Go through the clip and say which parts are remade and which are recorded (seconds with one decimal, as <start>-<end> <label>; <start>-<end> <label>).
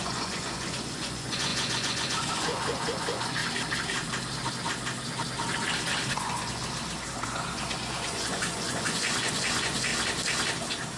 0.0-3.4 remade; 3.4-6.1 recorded; 6.1-6.6 remade; 6.6-7.2 recorded; 7.2-9.9 remade; 9.9-11.0 recorded